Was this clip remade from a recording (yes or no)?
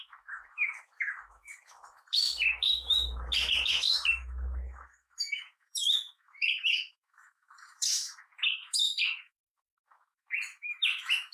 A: yes